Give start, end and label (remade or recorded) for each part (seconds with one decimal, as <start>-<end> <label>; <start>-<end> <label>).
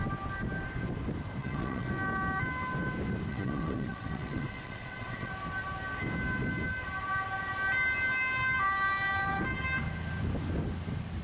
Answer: 0.0-1.4 recorded; 1.4-1.9 remade; 1.9-3.3 recorded; 3.3-5.3 remade; 5.3-11.2 recorded